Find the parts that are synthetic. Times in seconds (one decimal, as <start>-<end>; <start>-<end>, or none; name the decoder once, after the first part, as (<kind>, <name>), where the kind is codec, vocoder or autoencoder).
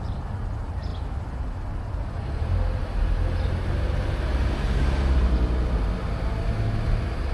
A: 0.0-0.9 (vocoder, BigVGAN v2); 1.9-2.8